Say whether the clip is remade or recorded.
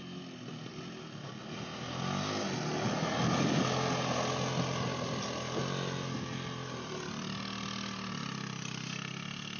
recorded